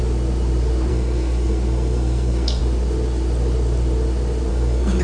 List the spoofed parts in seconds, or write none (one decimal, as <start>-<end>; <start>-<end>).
0.9-2.6; 4.5-5.0